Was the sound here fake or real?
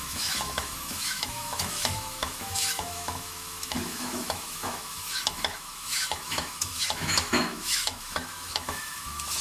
fake